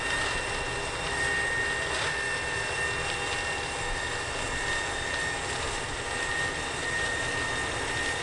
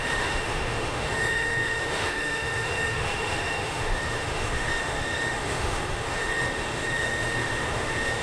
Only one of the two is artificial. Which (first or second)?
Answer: second